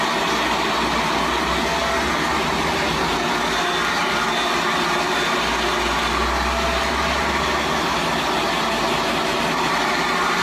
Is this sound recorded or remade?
recorded